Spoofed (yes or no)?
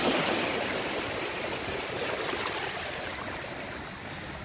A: no